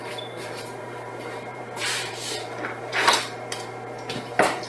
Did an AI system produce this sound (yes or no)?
yes